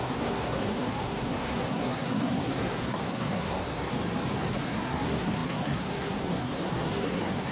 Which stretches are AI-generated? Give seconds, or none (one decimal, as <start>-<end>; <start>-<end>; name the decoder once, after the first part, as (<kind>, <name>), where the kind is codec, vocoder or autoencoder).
0.0-3.9 (codec, SNAC); 4.5-7.5